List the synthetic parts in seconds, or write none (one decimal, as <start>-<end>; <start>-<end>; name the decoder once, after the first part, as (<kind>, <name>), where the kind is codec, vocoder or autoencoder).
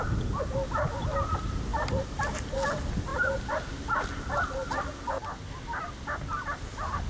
1.7-2.5 (vocoder, BigVGAN v2)